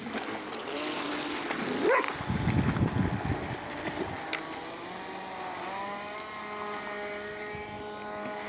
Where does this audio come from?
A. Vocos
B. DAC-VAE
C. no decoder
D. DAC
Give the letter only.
C